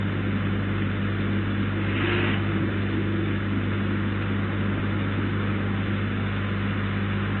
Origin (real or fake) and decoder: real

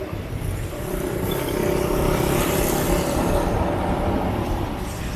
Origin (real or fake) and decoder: fake, vocoder, BigVGAN v2